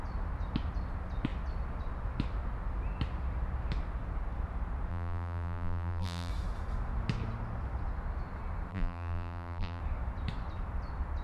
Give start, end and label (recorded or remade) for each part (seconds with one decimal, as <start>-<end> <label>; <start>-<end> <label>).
0.0-4.9 recorded; 4.9-6.3 remade; 6.3-8.7 recorded; 8.7-9.8 remade; 9.8-11.2 recorded